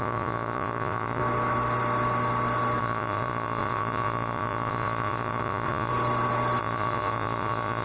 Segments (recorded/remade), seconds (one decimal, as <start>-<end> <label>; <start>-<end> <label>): 0.0-1.2 remade; 1.2-2.8 recorded; 2.8-5.9 remade; 5.9-6.6 recorded; 6.6-7.8 remade